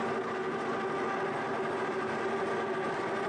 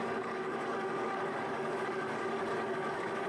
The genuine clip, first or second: first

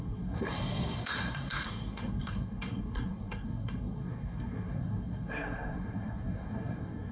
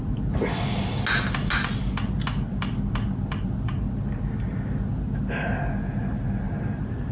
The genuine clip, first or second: second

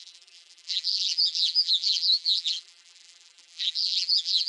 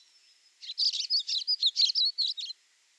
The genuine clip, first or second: second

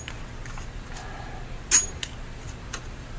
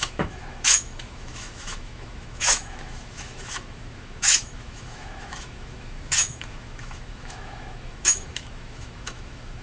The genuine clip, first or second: first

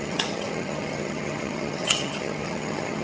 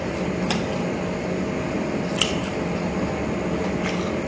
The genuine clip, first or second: second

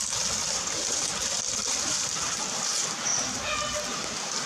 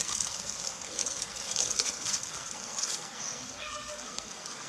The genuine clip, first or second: first